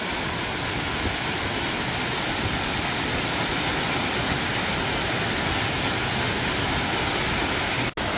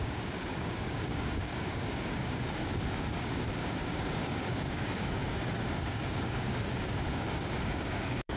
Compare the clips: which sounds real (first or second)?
first